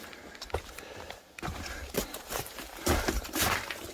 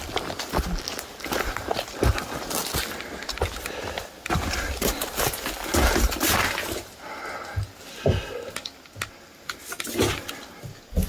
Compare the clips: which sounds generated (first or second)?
first